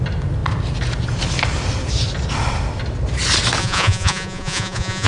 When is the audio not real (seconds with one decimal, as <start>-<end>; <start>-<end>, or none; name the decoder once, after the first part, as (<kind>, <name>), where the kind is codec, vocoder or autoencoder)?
3.6-5.1 (vocoder, Vocos)